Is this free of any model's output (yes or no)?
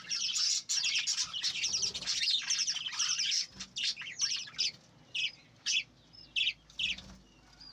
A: yes